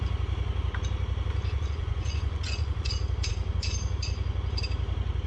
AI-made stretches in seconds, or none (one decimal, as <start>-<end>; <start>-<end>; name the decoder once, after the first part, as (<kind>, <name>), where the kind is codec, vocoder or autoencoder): 1.4-2.9 (vocoder, Vocos)